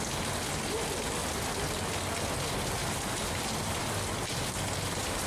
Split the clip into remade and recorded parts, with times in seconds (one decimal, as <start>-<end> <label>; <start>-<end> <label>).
0.0-5.3 recorded